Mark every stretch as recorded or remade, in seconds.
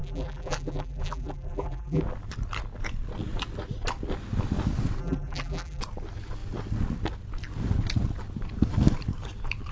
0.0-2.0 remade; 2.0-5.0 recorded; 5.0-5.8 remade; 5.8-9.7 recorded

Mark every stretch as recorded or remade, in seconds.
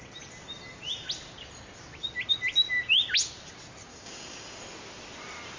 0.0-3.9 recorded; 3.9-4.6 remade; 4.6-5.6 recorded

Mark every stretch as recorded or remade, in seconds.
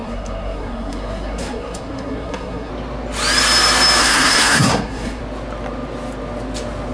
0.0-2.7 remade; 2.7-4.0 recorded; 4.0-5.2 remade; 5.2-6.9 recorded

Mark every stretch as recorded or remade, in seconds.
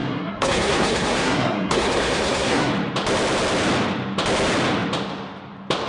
0.0-2.7 remade; 2.7-5.9 recorded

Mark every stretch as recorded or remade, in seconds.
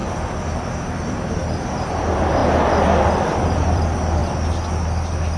0.0-2.4 remade; 2.4-3.0 recorded; 3.0-4.2 remade; 4.2-5.4 recorded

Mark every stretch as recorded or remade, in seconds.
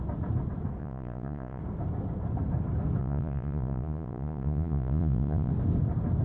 0.0-0.8 recorded; 0.8-1.6 remade; 1.6-3.0 recorded; 3.0-5.5 remade; 5.5-6.2 recorded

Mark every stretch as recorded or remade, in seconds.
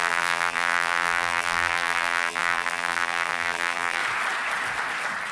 0.0-4.0 remade; 4.0-5.3 recorded